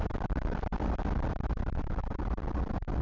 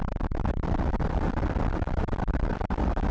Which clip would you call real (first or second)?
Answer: first